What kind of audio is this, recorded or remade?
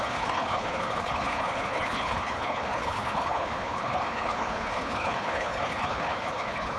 remade